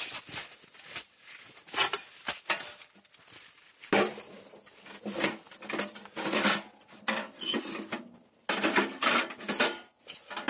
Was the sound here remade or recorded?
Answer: recorded